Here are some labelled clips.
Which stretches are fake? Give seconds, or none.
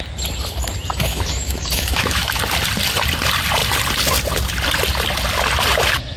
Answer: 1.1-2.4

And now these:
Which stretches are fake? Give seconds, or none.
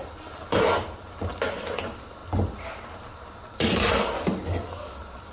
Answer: none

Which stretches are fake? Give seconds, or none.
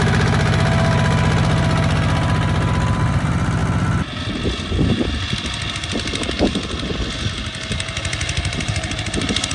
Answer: none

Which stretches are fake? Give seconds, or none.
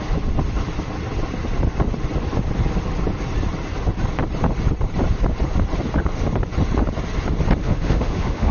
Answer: 7.6-8.5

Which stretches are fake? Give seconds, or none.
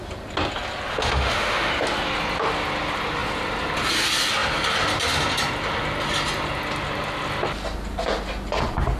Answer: 0.9-1.7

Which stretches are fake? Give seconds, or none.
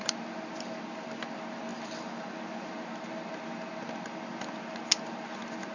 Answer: none